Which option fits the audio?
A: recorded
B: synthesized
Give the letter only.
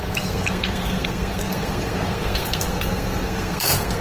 B